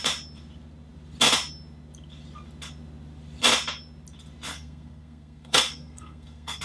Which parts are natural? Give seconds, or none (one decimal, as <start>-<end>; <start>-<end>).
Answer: 0.0-4.5